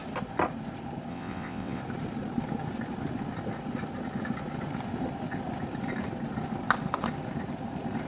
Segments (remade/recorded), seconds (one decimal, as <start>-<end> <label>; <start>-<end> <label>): 0.0-1.1 recorded; 1.1-1.8 remade; 1.8-8.1 recorded